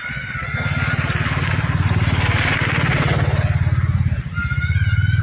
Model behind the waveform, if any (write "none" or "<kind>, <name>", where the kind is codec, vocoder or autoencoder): none